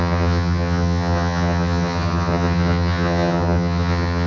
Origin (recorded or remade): remade